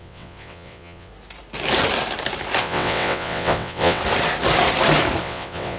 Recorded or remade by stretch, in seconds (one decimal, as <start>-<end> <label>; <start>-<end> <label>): 0.0-1.1 remade; 1.1-2.6 recorded; 2.6-4.0 remade; 4.0-5.2 recorded; 5.2-5.8 remade